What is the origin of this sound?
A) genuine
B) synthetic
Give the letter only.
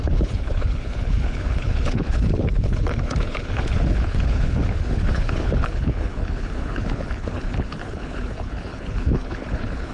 B